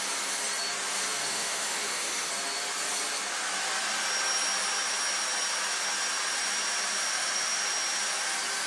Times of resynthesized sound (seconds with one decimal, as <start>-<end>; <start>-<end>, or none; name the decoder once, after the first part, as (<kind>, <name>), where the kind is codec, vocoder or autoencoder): 1.3-2.3 (autoencoder, DAC-VAE); 7.1-7.6